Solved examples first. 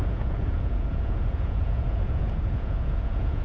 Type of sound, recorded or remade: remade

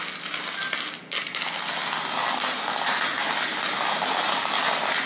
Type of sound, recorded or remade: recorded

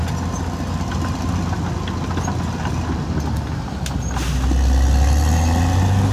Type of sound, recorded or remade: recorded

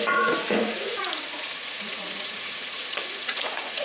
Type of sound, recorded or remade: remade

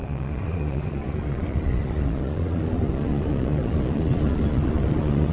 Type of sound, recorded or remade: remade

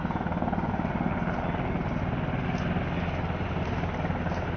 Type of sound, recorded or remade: recorded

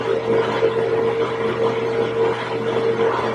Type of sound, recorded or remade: recorded